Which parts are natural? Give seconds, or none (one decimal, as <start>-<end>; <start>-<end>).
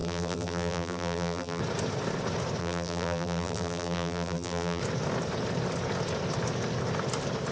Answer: 1.6-2.6; 4.8-7.5